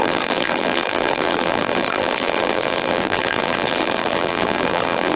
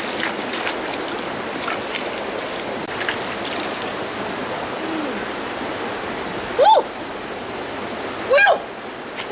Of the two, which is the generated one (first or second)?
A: first